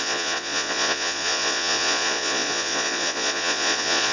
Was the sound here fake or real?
fake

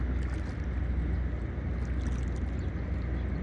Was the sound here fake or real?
real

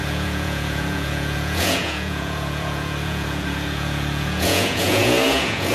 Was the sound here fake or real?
fake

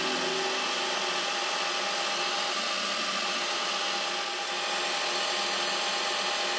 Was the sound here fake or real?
real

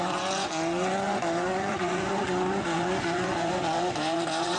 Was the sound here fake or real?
fake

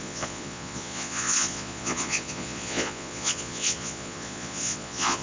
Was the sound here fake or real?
fake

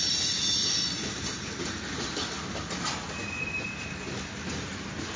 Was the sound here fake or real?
real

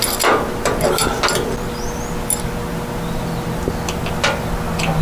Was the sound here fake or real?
real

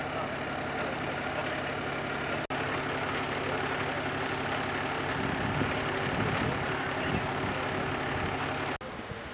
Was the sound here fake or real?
real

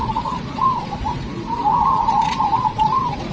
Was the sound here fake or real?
fake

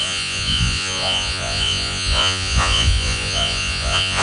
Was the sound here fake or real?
fake